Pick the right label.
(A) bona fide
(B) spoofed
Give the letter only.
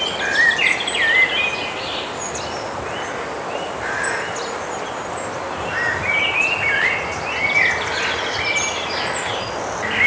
A